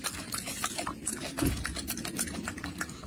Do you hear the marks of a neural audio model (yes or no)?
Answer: no